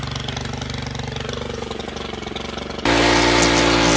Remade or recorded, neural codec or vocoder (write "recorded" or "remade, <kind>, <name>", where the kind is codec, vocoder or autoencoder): recorded